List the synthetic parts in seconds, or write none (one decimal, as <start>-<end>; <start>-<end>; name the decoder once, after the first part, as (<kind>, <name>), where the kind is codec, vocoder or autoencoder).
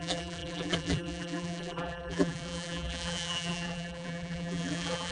0.0-5.1 (vocoder, BigVGAN v2)